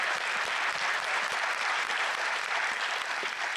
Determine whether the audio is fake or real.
fake